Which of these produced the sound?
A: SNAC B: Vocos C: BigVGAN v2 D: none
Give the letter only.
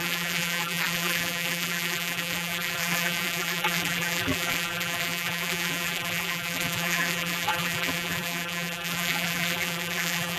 C